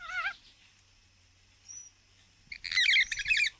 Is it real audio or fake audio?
real